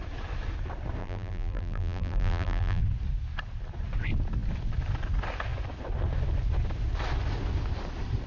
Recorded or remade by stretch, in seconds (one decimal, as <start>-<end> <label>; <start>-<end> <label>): 0.0-1.0 recorded; 1.0-2.8 remade; 2.8-8.3 recorded